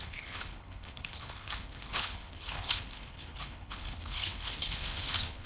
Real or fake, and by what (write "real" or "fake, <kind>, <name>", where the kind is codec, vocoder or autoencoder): fake, codec, HILCodec